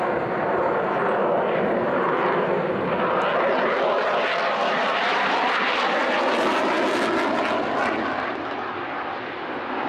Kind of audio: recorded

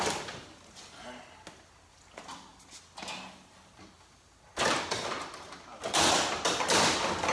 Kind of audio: recorded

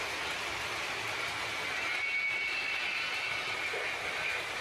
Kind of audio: recorded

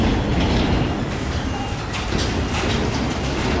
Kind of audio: recorded